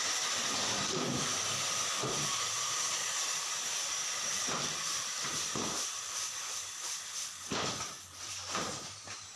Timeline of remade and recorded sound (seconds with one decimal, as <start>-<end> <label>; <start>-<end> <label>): 0.0-0.4 remade; 0.4-1.2 recorded; 1.2-6.8 remade; 6.8-7.3 recorded; 7.3-9.4 remade